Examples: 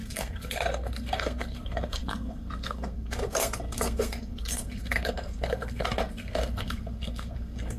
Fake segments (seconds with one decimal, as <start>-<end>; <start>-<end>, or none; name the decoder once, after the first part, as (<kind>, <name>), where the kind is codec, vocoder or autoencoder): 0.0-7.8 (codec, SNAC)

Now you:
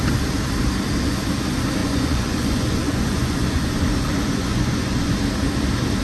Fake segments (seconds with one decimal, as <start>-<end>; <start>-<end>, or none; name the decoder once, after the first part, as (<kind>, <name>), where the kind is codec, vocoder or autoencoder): 1.8-5.1 (vocoder, Vocos)

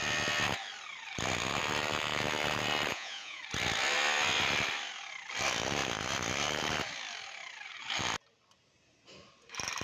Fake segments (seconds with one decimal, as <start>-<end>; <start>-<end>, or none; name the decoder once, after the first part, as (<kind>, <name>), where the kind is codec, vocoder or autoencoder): 2.9-3.4 (vocoder, Vocos)

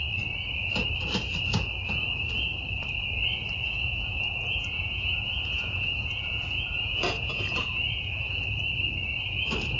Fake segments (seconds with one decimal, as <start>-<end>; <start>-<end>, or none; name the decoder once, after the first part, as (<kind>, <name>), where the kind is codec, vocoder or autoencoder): 3.6-8.1 (vocoder, Vocos)

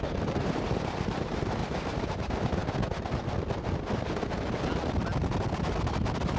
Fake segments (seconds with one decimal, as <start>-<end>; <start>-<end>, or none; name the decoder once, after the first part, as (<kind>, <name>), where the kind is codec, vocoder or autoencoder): 0.0-1.6 (vocoder, BigVGAN v2); 2.1-2.6

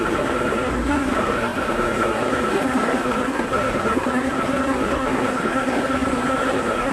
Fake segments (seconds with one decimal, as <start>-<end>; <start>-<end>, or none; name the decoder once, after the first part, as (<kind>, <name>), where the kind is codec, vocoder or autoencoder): 0.0-6.9 (codec, SNAC)

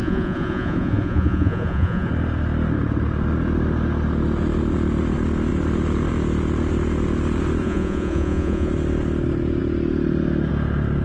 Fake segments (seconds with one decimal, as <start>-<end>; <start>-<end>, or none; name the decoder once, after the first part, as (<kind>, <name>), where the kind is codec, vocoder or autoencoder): 0.0-2.1 (vocoder, Vocos); 7.6-8.7